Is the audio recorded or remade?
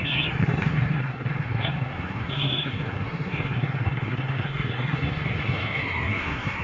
remade